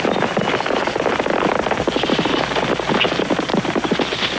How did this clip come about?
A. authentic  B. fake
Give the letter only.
A